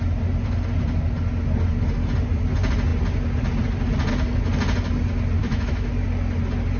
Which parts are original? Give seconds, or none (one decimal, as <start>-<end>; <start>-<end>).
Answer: 0.0-5.4; 5.9-6.8